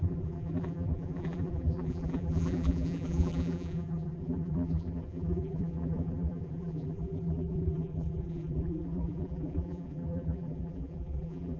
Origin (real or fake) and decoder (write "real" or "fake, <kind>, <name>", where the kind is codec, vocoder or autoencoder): fake, vocoder, BigVGAN v2